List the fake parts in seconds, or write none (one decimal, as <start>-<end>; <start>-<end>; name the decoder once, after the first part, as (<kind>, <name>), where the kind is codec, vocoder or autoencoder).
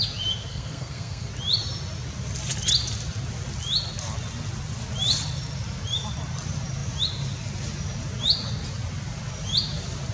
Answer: 0.5-1.3 (codec, SNAC)